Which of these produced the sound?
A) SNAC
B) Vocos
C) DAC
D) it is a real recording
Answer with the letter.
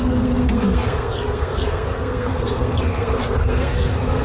A